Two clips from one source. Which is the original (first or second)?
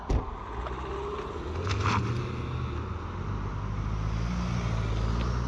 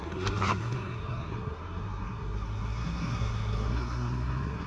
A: first